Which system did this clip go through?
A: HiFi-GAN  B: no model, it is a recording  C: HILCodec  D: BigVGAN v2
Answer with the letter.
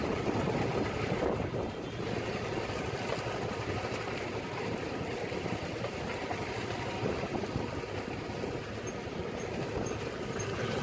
B